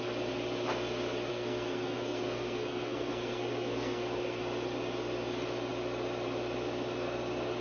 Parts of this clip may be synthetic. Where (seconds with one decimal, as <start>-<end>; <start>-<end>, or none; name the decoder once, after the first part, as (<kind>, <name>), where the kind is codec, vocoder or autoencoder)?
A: 1.3-4.4 (codec, SNAC)